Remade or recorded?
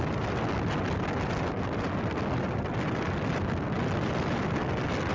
recorded